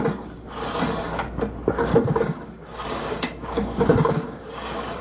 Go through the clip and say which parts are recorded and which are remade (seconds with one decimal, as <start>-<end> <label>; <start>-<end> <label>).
0.0-1.9 recorded; 1.9-5.0 remade